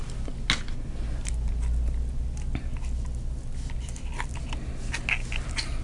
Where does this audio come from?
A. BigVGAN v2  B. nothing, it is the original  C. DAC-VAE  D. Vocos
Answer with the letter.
B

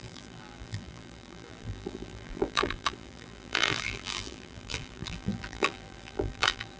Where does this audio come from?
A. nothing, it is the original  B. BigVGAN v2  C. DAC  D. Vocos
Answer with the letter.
B